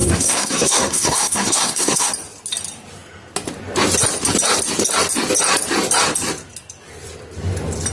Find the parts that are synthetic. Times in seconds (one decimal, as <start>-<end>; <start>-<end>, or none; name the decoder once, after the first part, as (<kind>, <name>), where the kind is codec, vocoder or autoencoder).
0.0-2.1 (codec, SNAC)